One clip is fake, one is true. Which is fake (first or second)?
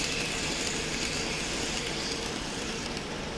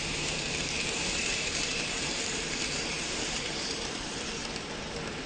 second